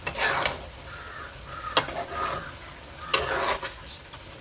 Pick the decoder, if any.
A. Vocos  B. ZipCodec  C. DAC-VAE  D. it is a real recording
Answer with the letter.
D